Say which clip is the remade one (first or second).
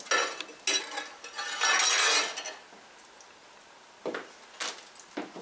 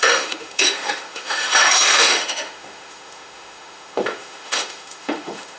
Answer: second